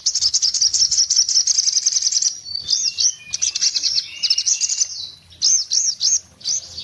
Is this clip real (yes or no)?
yes